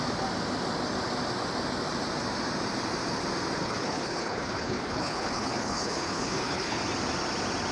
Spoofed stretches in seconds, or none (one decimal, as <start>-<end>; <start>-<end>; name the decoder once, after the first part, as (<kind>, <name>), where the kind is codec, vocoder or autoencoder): 3.6-6.8 (codec, HILCodec)